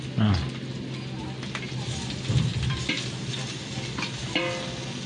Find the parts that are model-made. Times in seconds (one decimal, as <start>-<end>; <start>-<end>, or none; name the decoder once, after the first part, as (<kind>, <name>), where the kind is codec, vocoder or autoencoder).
none